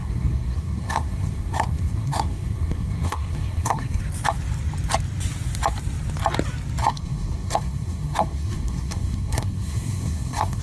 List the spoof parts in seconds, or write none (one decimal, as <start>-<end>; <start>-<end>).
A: 0.0-4.0; 6.8-10.6